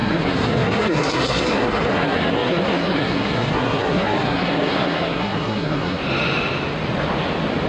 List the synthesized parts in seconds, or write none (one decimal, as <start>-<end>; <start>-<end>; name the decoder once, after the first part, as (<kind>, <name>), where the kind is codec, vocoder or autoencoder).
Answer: 0.0-6.0 (codec, SNAC)